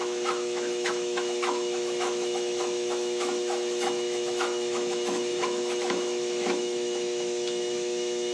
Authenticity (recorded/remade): remade